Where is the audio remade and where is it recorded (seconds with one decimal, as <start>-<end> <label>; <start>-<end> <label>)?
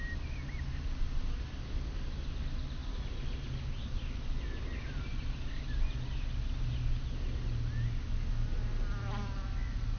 0.0-10.0 recorded